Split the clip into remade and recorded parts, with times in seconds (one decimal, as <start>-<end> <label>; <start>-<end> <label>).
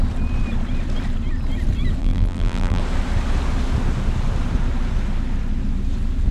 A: 0.0-2.0 recorded; 2.0-2.8 remade; 2.8-6.3 recorded